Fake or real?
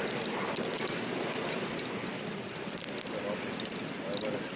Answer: real